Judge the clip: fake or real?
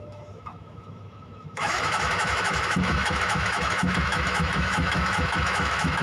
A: fake